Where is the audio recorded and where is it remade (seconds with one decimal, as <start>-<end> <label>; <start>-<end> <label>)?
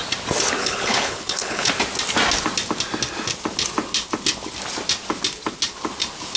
0.0-0.6 recorded; 0.6-1.7 remade; 1.7-6.4 recorded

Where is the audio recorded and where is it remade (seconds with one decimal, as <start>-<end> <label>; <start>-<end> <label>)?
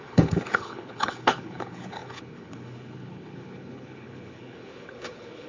0.0-5.5 remade